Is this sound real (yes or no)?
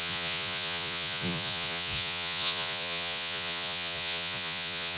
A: no